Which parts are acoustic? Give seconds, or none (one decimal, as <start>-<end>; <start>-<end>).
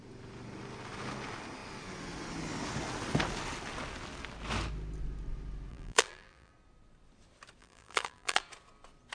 0.0-5.7; 6.5-7.6; 8.4-9.1